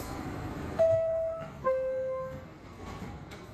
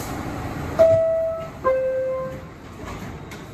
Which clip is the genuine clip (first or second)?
second